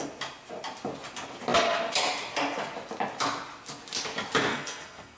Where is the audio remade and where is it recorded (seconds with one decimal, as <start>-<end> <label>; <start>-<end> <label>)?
0.0-4.5 recorded; 4.5-5.2 remade